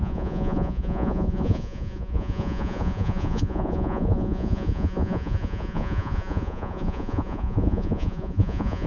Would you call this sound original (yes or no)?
no